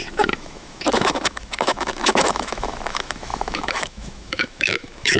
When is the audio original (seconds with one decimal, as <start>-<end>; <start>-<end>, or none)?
none